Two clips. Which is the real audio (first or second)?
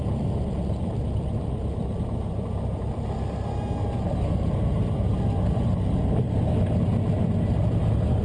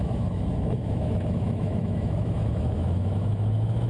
first